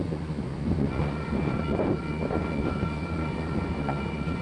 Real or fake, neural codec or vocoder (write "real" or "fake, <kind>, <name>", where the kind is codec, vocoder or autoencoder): fake, vocoder, Vocos